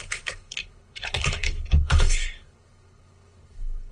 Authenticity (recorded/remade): remade